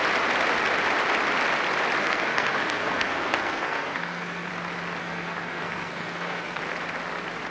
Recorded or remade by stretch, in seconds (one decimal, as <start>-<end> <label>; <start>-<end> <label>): 0.0-2.0 recorded; 2.0-4.5 remade; 4.5-5.0 recorded; 5.0-6.6 remade; 6.6-7.5 recorded